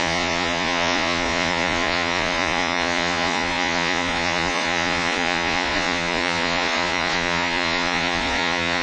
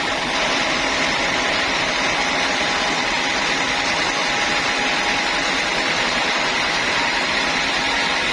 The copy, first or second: first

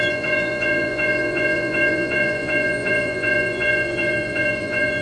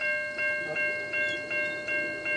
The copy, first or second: first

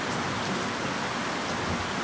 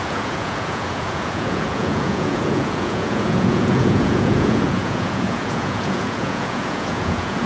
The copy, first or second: second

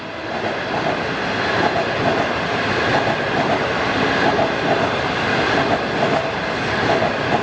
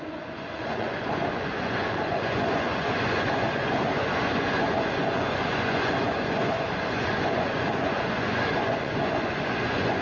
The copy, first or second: second